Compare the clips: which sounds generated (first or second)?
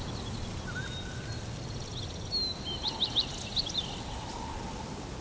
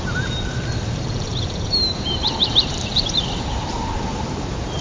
second